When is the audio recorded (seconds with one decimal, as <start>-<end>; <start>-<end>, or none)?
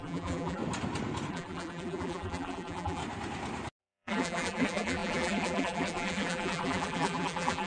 0.6-1.3; 3.0-3.8